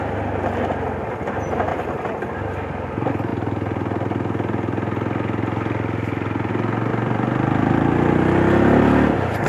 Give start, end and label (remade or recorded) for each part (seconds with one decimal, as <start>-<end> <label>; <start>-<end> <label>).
0.0-1.7 recorded; 1.7-2.2 remade; 2.2-6.9 recorded; 6.9-7.7 remade; 7.7-9.5 recorded